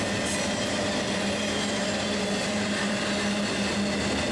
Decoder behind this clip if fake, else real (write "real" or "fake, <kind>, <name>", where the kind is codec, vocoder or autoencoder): real